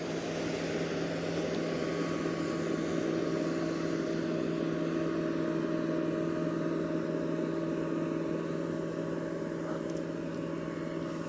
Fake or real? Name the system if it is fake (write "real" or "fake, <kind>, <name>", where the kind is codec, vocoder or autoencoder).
real